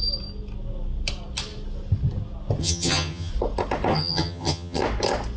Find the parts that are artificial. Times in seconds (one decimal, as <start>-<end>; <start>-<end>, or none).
2.6-3.3; 3.9-4.8